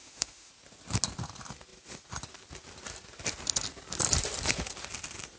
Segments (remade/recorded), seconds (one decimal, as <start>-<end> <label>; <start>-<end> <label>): 0.0-0.5 remade; 0.5-5.4 recorded